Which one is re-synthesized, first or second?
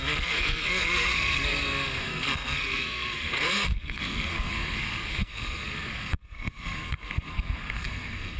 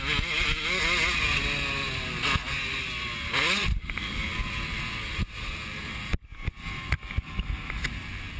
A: first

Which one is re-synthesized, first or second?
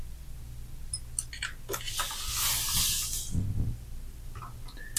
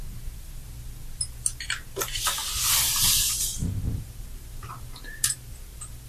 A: second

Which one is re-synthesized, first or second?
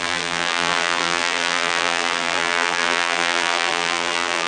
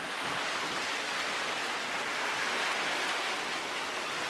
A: first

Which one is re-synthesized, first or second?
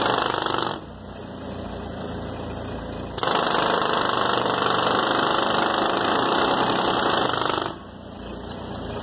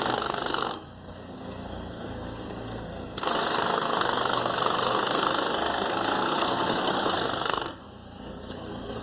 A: second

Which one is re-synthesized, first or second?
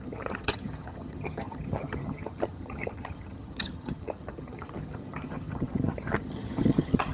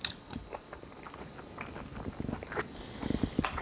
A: first